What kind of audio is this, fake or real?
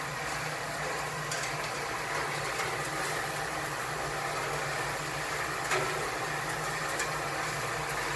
real